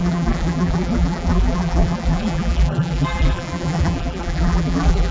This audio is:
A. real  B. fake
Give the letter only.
B